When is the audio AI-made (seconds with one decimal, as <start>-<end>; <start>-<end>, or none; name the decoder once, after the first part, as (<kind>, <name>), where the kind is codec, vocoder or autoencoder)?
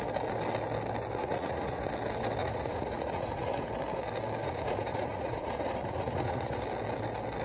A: 1.2-1.9 (vocoder, Vocos); 2.4-3.7; 4.4-6.6